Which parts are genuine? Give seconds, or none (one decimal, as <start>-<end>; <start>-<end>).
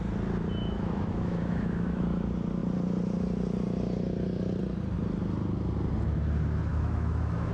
0.0-0.6; 2.0-6.7